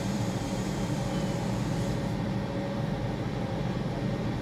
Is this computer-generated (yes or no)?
yes